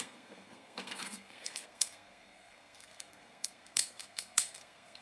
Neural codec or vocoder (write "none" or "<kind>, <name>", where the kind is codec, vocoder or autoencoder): codec, SNAC